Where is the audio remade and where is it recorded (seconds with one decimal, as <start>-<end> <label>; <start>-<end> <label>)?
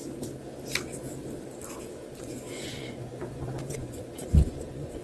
0.0-2.2 recorded; 2.2-5.0 remade